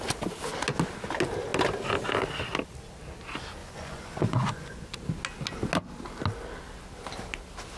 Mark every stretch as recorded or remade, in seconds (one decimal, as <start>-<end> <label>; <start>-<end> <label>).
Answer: 0.0-3.6 recorded; 3.6-4.8 remade; 4.8-7.8 recorded